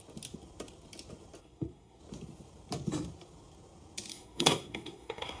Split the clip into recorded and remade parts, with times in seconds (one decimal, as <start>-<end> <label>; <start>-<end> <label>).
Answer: 0.0-1.4 recorded; 1.4-2.0 remade; 2.0-4.1 recorded; 4.1-5.4 remade

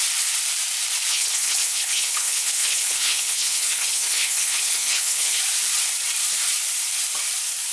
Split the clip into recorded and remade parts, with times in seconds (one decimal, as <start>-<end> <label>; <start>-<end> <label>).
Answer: 0.0-1.1 recorded; 1.1-5.4 remade; 5.4-7.7 recorded

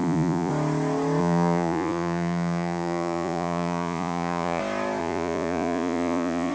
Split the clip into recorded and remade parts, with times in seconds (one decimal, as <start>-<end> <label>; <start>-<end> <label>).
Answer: 0.0-0.5 remade; 0.5-1.2 recorded; 1.2-4.6 remade; 4.6-5.0 recorded; 5.0-6.5 remade

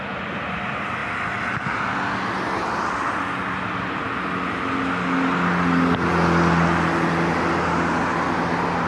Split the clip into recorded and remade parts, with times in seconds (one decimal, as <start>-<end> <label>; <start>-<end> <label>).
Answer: 0.0-8.9 recorded

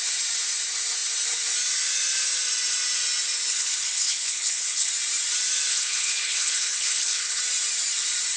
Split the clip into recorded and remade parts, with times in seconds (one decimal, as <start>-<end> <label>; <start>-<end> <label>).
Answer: 0.0-3.5 recorded; 3.5-4.9 remade; 4.9-5.7 recorded; 5.7-7.4 remade; 7.4-8.4 recorded

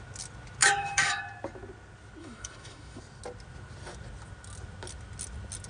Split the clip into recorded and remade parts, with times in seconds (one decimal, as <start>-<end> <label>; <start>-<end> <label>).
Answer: 0.0-0.6 recorded; 0.6-1.2 remade; 1.2-2.2 recorded; 2.2-3.0 remade; 3.0-5.7 recorded